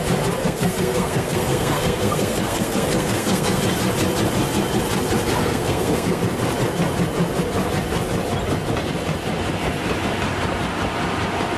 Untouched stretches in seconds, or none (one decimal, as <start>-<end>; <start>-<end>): 0.0-0.4; 3.6-5.4; 6.2-11.6